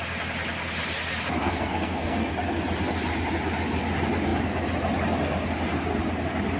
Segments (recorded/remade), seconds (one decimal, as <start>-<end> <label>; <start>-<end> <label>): 0.0-1.4 recorded; 1.4-2.3 remade; 2.3-6.6 recorded